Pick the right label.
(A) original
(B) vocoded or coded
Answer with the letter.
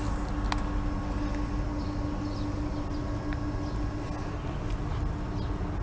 A